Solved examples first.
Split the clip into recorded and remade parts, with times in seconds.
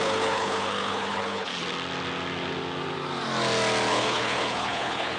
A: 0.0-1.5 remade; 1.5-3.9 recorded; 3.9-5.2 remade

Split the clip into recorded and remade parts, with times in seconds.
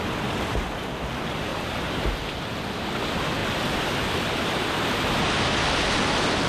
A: 0.0-1.5 recorded; 1.5-2.2 remade; 2.2-6.5 recorded